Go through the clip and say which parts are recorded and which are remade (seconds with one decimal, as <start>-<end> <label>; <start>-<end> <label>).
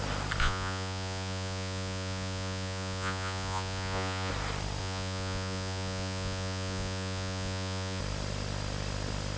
0.0-0.4 recorded; 0.4-4.3 remade; 4.3-4.8 recorded; 4.8-8.0 remade; 8.0-9.4 recorded